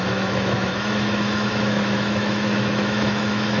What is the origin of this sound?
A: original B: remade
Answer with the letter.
B